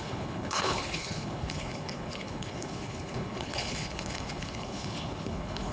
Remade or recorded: remade